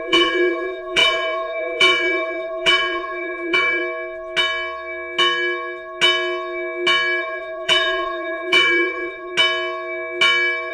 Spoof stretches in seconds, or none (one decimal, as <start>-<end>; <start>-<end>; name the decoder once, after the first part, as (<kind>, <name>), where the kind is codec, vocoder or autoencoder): 0.0-3.8 (vocoder, BigVGAN v2); 7.2-9.3